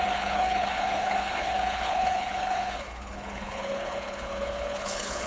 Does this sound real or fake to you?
fake